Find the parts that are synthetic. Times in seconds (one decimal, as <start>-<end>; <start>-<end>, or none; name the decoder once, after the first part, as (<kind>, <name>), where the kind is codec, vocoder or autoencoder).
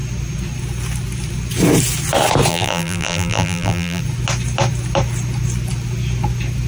2.5-4.0 (vocoder, BigVGAN v2)